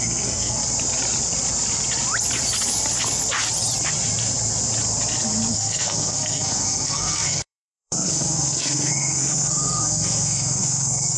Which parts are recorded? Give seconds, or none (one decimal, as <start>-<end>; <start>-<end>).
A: 0.6-5.5